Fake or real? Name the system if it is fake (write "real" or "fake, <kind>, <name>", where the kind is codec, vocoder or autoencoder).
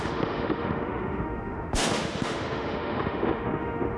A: fake, autoencoder, DAC-VAE